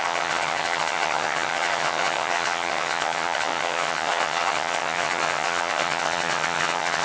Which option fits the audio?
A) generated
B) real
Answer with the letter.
A